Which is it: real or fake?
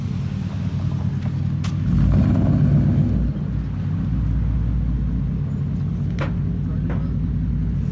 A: real